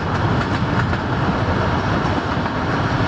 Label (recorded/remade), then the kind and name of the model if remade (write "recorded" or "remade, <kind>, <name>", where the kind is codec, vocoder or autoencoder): recorded